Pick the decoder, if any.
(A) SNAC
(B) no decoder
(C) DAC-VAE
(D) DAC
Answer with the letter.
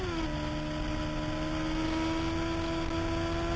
B